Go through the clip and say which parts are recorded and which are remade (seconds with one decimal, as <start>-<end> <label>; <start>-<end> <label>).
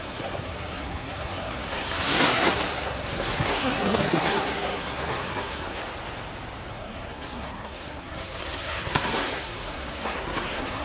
0.0-5.8 remade; 5.8-6.7 recorded; 6.7-10.8 remade